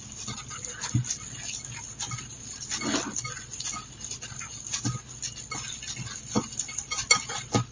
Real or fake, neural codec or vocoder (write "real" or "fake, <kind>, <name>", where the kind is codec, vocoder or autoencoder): real